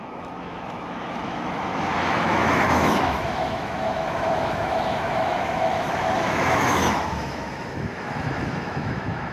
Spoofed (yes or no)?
yes